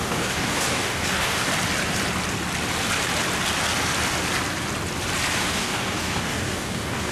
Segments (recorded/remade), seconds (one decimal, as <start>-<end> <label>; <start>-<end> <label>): 0.0-1.5 remade; 1.5-5.3 recorded; 5.3-7.1 remade